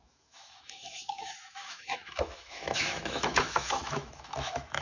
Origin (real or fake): fake